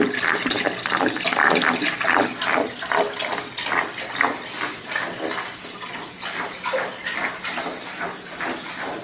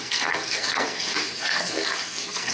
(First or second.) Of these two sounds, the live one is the first